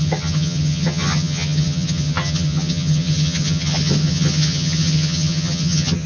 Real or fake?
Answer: fake